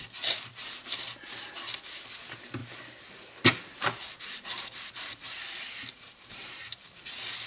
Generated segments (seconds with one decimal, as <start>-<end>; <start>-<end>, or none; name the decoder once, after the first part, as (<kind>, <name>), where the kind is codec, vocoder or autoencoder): 0.5-1.1 (vocoder, BigVGAN v2); 2.6-7.1